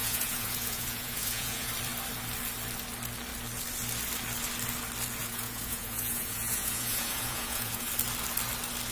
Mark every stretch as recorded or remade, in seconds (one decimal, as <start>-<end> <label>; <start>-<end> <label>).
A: 0.0-1.7 remade; 1.7-5.2 recorded; 5.2-7.9 remade; 7.9-8.9 recorded